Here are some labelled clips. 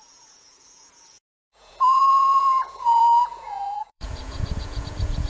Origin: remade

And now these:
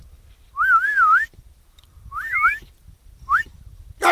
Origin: recorded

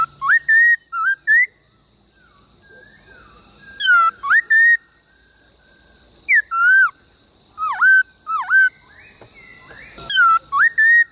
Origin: recorded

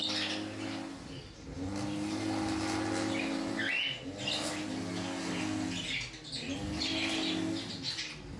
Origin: recorded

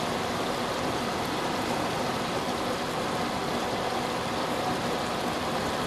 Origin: recorded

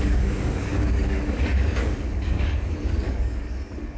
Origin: remade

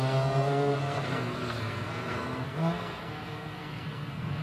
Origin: remade